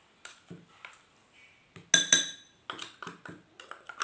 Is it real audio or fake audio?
real